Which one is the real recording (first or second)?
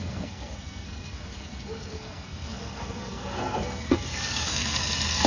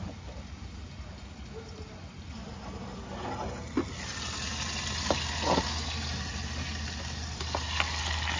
second